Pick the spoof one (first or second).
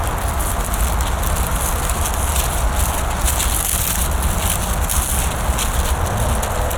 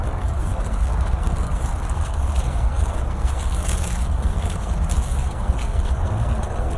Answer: second